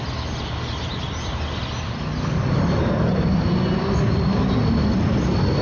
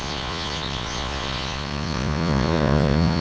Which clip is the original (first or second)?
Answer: first